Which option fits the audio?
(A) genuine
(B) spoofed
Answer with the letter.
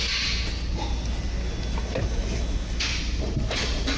A